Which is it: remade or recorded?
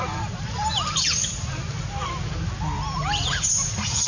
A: recorded